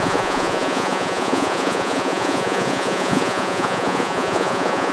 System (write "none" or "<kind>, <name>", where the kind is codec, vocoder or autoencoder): vocoder, Vocos